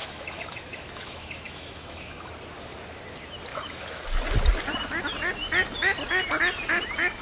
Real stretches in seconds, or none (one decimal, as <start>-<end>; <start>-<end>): 2.3-3.5; 4.0-7.2